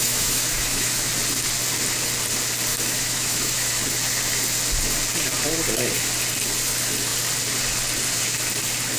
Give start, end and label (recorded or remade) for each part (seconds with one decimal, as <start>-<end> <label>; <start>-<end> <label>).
0.0-1.1 remade; 1.1-2.7 recorded; 2.7-3.8 remade; 3.8-9.0 recorded

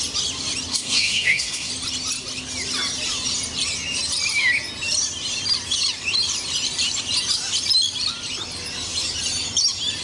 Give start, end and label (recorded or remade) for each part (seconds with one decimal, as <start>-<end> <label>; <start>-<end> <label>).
0.0-0.7 recorded; 0.7-1.7 remade; 1.7-10.0 recorded